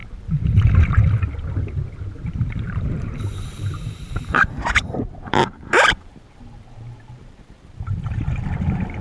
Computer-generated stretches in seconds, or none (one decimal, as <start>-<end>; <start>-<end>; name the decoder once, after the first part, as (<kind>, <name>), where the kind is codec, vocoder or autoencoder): 2.6-9.0 (vocoder, BigVGAN v2)